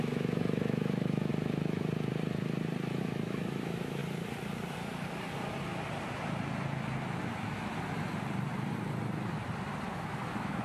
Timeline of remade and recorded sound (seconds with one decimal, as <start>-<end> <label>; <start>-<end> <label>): 0.0-1.3 remade; 1.3-3.0 recorded; 3.0-4.0 remade; 4.0-7.2 recorded; 7.2-7.7 remade; 7.7-9.9 recorded; 9.9-10.6 remade